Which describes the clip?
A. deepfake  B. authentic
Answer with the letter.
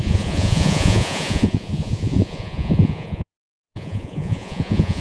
A